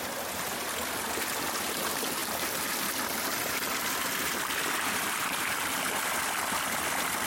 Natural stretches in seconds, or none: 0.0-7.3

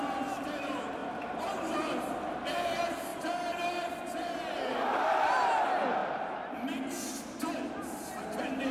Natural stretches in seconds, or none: 0.0-1.0; 2.0-3.1; 3.9-6.0; 6.8-8.7

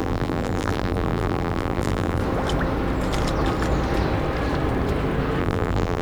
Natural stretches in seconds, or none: 2.2-5.4

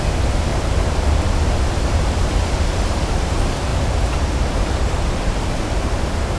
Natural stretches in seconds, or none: none

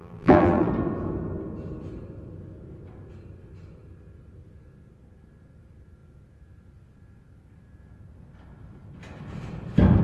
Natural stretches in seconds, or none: 0.7-10.0

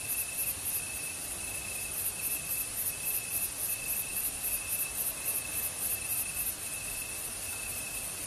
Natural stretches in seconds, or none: 0.0-8.3

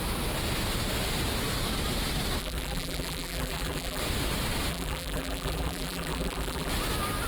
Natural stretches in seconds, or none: 0.0-2.4; 4.0-4.7; 6.7-7.3